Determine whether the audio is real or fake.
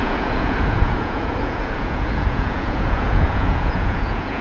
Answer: fake